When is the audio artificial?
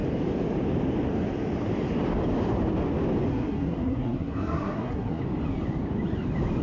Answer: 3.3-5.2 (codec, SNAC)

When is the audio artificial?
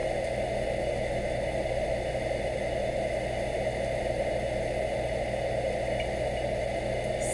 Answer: none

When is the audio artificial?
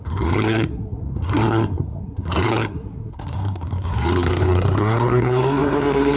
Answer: 0.0-6.2 (codec, SNAC)